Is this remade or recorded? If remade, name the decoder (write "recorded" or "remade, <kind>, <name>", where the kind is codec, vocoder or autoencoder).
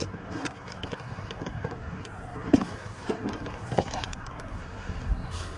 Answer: remade, codec, SNAC